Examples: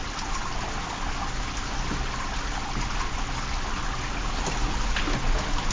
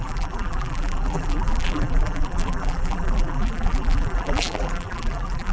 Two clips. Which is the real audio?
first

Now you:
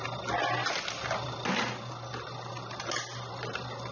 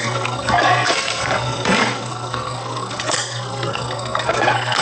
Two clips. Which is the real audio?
first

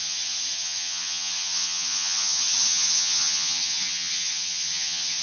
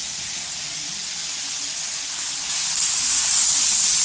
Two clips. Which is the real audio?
second